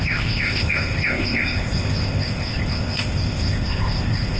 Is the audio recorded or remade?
remade